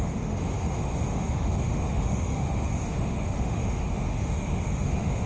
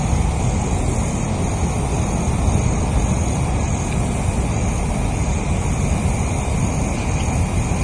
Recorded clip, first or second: second